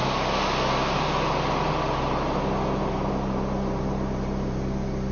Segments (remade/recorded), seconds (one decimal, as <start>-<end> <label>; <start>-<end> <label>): 0.0-5.1 recorded

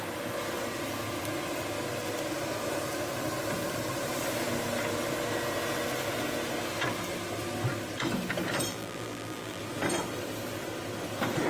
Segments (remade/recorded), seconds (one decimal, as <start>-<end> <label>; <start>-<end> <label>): 0.0-8.7 recorded; 8.7-9.6 remade; 9.6-11.5 recorded

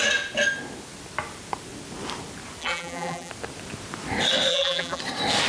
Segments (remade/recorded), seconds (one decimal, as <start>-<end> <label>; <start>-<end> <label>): 0.0-2.6 recorded; 2.6-3.3 remade; 3.3-4.5 recorded; 4.5-5.0 remade; 5.0-5.5 recorded

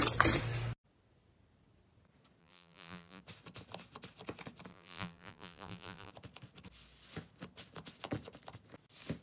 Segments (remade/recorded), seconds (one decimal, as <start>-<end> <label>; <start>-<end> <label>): 0.0-2.4 recorded; 2.4-3.2 remade; 3.2-4.7 recorded; 4.7-6.1 remade; 6.1-9.2 recorded